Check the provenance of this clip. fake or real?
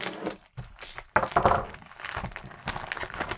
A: real